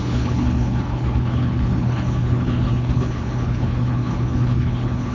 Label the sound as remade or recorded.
remade